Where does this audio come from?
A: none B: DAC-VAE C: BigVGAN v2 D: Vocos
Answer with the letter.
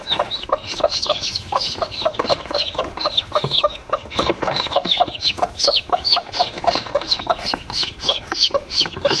B